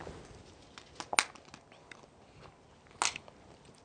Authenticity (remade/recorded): recorded